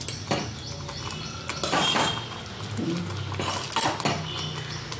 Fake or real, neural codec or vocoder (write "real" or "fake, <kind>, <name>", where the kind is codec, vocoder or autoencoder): real